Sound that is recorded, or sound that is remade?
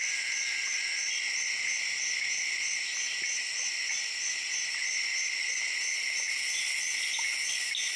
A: recorded